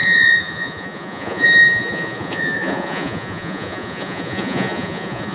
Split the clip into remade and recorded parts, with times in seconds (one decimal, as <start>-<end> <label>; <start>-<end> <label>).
0.0-5.3 remade